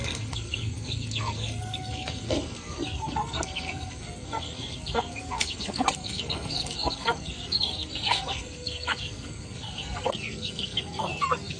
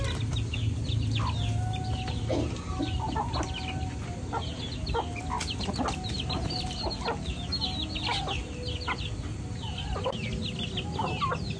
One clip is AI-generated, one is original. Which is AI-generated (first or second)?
first